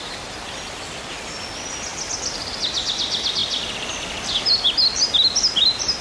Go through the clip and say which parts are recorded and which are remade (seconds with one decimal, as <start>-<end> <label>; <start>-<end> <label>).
0.0-6.0 recorded

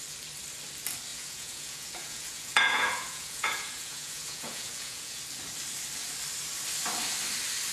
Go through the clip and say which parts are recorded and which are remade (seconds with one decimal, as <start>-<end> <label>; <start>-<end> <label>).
0.0-1.1 recorded; 1.1-5.2 remade; 5.2-7.7 recorded

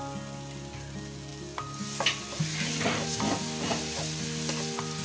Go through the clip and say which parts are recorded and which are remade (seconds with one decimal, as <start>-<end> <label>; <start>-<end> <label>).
0.0-5.0 recorded

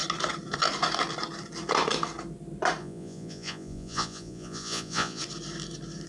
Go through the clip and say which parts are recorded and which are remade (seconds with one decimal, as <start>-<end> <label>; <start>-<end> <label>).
0.0-2.8 recorded; 2.8-5.2 remade; 5.2-6.1 recorded

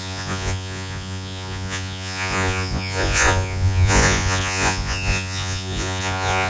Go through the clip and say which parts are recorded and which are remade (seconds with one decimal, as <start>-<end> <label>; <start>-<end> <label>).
0.0-6.5 remade

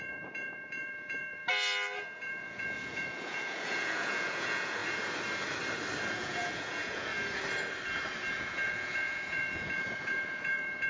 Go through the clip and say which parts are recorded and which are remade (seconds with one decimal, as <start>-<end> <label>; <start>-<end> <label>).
0.0-1.4 remade; 1.4-2.2 recorded; 2.2-4.8 remade; 4.8-6.1 recorded; 6.1-7.1 remade; 7.1-8.3 recorded; 8.3-10.9 remade

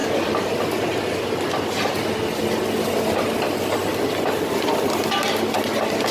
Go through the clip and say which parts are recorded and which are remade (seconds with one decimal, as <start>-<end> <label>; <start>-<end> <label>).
0.0-6.1 recorded

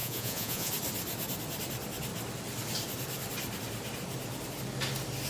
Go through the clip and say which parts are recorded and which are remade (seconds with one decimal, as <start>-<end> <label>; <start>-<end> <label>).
0.0-0.7 remade; 0.7-5.3 recorded